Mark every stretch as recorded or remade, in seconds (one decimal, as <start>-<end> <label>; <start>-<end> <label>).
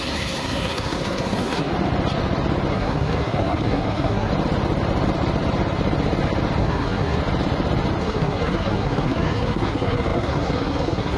0.0-1.7 remade; 1.7-2.7 recorded; 2.7-4.3 remade; 4.3-6.6 recorded; 6.6-7.2 remade; 7.2-8.0 recorded; 8.0-11.2 remade